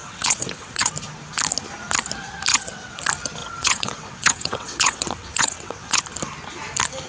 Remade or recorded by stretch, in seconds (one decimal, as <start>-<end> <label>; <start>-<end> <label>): 0.0-0.9 remade; 0.9-2.5 recorded; 2.5-3.0 remade; 3.0-3.4 recorded; 3.4-6.0 remade; 6.0-7.1 recorded